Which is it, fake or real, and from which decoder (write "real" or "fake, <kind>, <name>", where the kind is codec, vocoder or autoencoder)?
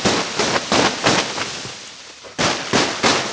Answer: real